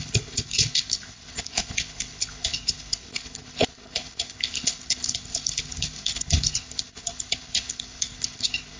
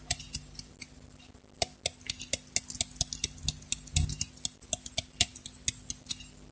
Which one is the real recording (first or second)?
second